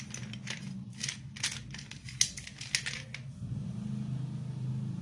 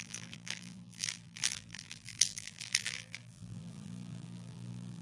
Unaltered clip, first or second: first